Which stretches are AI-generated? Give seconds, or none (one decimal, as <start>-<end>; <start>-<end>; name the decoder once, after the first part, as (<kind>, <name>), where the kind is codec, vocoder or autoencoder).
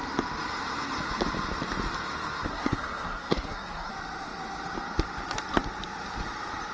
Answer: 2.5-3.9 (codec, SNAC)